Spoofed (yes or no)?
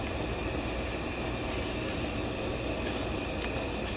no